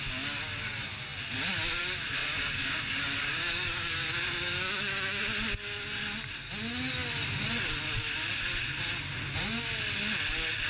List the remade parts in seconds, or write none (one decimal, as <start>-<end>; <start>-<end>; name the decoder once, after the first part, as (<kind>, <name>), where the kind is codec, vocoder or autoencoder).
2.2-5.2 (codec, DAC)